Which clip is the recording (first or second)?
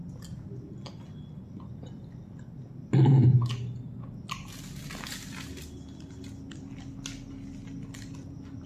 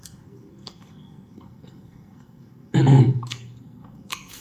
first